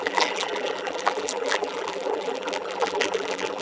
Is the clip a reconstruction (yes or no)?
yes